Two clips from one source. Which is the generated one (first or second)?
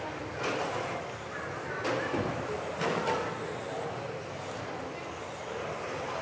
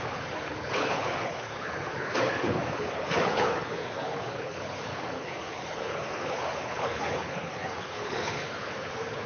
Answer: second